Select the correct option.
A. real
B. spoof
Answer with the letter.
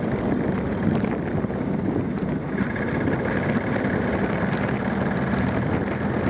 A